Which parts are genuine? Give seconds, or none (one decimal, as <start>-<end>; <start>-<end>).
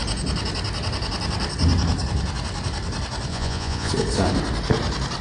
0.0-3.3; 3.9-5.2